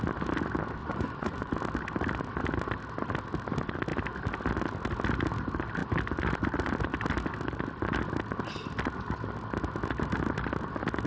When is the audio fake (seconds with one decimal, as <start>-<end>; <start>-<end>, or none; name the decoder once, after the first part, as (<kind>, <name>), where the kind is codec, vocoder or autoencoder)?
0.8-1.5 (vocoder, Vocos)